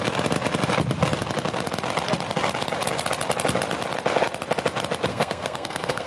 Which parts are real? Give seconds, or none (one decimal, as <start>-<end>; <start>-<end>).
0.0-5.1